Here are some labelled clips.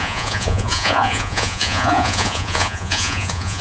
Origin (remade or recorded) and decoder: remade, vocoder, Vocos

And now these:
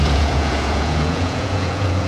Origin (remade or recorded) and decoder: remade, vocoder, Vocos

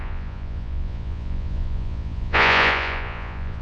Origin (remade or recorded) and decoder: remade, vocoder, Vocos